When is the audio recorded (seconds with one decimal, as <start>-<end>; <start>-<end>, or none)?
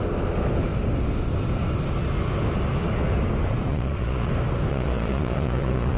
0.0-3.7; 4.3-4.7